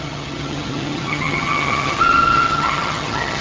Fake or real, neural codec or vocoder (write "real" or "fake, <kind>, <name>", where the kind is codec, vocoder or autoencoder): fake, vocoder, HiFi-GAN